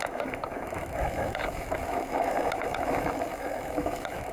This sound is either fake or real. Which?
fake